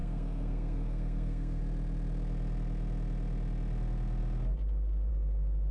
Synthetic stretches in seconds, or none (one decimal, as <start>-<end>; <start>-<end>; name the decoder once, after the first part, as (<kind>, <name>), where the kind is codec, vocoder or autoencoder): 0.0-1.6 (codec, SNAC)